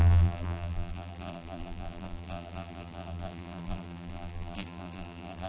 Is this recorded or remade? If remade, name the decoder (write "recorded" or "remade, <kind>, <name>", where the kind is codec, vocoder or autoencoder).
remade, vocoder, BigVGAN v2